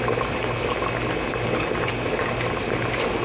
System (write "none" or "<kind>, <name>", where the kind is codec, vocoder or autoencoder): none